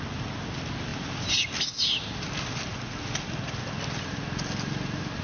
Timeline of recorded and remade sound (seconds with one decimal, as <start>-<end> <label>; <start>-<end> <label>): 0.0-5.2 recorded